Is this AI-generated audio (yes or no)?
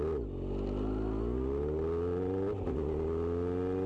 no